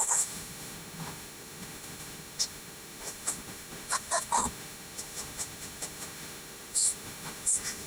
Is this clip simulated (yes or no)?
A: yes